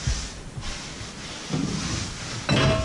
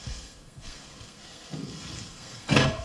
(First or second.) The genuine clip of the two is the first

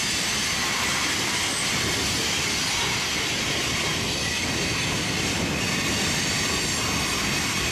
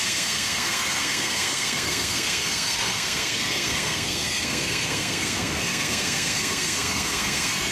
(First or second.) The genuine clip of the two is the first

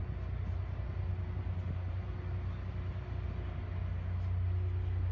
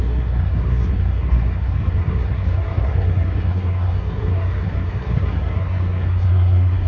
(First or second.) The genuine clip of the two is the first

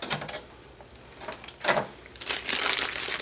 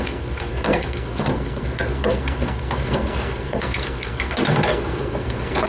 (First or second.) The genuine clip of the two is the first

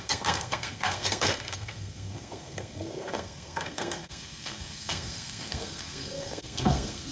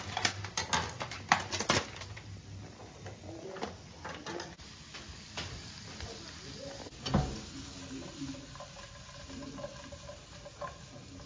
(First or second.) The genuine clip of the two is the second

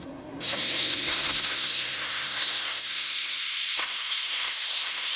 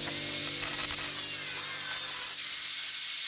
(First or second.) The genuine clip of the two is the second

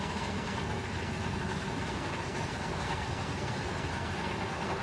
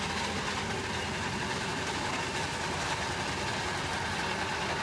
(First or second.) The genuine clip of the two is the second